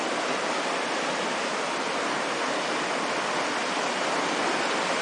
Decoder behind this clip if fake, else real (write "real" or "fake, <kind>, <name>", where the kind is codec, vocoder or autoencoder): real